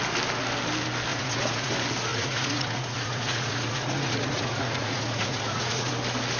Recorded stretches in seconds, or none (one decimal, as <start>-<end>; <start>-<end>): 0.0-1.1; 1.7-2.1; 5.9-6.4